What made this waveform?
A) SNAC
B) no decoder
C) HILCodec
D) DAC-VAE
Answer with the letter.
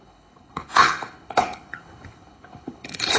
C